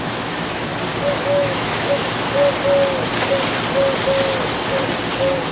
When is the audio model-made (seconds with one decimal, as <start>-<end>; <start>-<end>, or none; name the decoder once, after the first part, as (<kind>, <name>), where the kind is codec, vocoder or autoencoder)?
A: 0.0-0.7 (autoencoder, DAC-VAE); 1.2-2.0

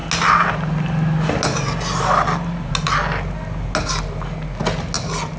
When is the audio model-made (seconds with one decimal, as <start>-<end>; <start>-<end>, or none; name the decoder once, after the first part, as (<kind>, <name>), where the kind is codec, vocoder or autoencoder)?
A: none

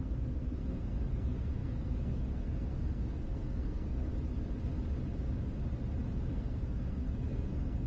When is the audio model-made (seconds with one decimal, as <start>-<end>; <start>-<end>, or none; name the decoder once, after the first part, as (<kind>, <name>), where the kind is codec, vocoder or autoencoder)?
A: 0.0-4.1 (codec, SNAC); 6.3-7.9

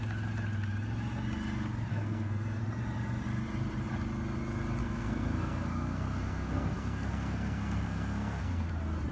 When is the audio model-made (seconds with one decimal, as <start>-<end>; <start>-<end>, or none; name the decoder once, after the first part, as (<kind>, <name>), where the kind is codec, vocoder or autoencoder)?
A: 1.9-2.6 (codec, SNAC); 4.8-8.7

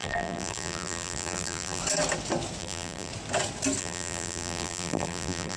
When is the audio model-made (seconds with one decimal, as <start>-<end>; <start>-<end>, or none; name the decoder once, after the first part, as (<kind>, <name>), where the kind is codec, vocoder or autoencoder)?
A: 0.0-1.8 (vocoder, BigVGAN v2); 2.6-3.1; 3.8-5.6

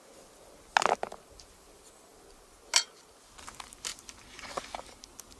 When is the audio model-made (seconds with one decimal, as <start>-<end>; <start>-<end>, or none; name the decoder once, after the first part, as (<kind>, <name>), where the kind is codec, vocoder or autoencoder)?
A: none

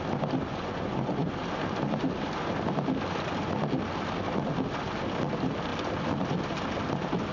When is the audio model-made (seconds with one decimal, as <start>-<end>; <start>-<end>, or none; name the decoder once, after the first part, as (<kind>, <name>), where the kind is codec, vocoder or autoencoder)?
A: 0.5-1.3 (vocoder, Vocos)

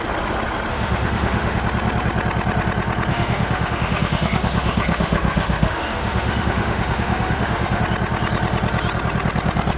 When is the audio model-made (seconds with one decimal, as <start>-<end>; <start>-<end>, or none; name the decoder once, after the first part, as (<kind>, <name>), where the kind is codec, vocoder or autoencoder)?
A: 0.7-1.6 (autoencoder, DAC-VAE); 3.1-7.8